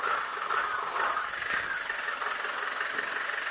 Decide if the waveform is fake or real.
real